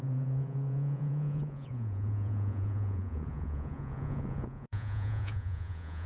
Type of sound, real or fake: fake